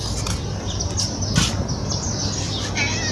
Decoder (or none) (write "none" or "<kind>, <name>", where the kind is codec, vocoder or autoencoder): none